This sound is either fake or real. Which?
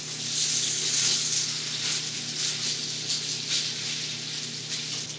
real